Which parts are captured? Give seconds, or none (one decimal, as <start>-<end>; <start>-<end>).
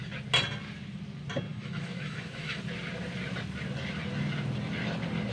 0.0-1.5; 2.6-5.3